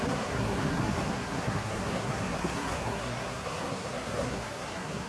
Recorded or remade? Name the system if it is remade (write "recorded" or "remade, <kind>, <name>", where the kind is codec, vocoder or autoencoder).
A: remade, codec, SNAC